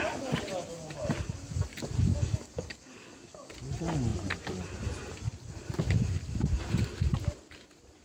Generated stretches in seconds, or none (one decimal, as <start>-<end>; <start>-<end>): 2.1-3.5